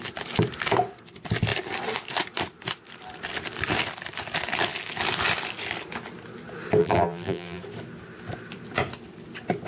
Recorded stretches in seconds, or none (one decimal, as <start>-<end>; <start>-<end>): 0.0-6.8; 7.6-9.7